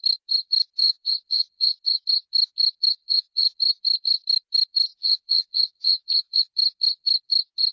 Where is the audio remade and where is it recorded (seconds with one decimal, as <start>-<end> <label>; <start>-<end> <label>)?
0.0-0.8 recorded; 0.8-2.0 remade; 2.0-3.0 recorded; 3.0-3.6 remade; 3.6-4.9 recorded; 4.9-6.4 remade; 6.4-7.7 recorded